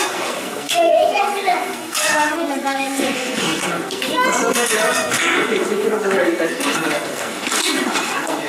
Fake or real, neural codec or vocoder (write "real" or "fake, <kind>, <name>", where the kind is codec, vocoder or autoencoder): fake, codec, SNAC